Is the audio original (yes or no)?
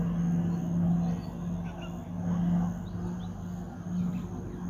yes